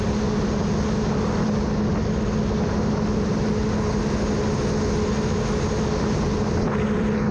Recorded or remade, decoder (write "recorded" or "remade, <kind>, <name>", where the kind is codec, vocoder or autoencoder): recorded